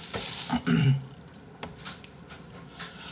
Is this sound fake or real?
fake